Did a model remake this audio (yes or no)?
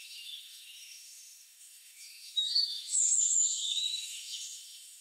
yes